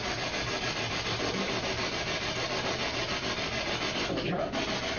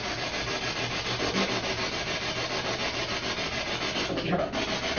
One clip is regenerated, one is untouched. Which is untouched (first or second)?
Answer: second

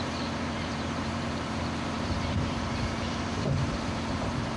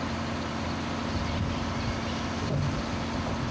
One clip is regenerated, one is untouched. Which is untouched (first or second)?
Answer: second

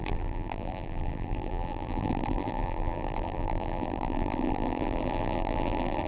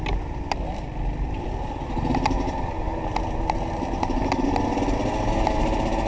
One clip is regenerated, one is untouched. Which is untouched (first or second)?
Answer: second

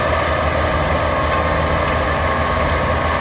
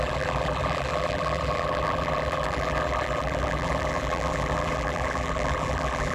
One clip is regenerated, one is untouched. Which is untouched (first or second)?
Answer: first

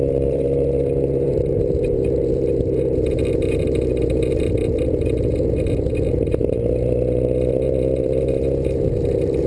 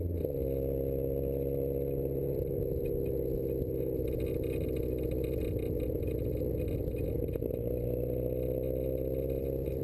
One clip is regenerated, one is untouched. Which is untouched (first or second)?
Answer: second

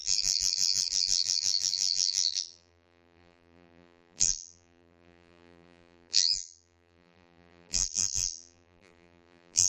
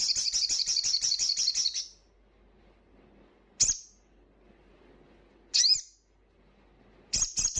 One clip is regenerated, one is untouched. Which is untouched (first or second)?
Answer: second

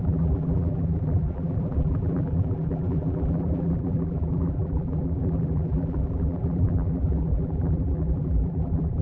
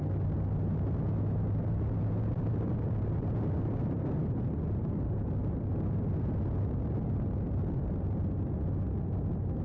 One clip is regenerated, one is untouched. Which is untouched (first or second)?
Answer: second